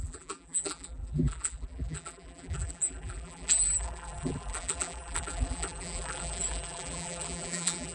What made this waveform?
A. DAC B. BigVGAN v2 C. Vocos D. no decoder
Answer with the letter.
B